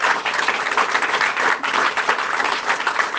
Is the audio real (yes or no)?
yes